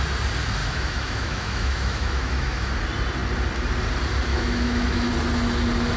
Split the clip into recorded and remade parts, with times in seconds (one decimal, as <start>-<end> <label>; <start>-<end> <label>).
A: 0.0-0.6 recorded; 0.6-2.7 remade; 2.7-4.3 recorded; 4.3-5.1 remade; 5.1-6.0 recorded